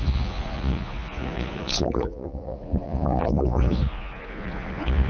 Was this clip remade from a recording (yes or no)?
yes